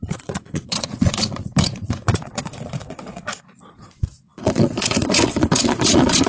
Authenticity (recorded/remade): remade